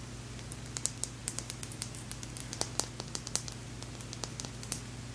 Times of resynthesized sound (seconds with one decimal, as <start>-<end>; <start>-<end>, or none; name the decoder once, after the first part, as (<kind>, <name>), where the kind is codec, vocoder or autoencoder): none